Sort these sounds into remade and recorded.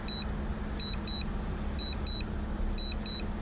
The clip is recorded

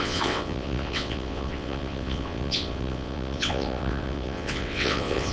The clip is remade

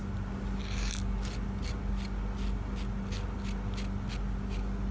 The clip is recorded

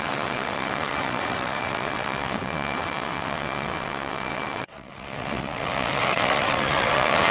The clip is remade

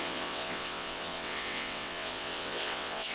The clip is remade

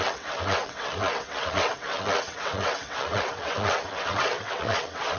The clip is remade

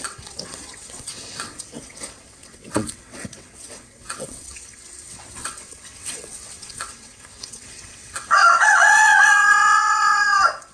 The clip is remade